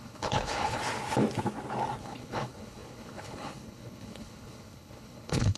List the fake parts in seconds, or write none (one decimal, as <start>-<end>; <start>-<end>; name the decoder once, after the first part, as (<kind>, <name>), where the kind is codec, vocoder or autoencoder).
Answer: 0.0-0.8 (codec, HILCodec); 2.0-5.6